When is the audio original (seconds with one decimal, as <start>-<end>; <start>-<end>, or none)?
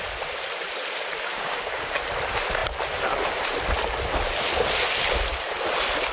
0.0-1.3; 2.0-6.1